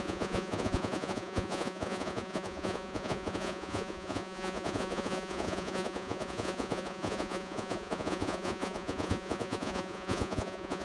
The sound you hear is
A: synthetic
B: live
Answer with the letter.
A